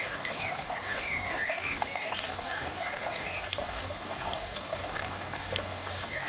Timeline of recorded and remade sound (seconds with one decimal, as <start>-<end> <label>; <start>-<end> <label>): 0.0-6.3 remade